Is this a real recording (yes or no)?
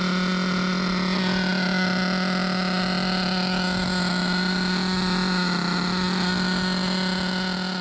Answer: yes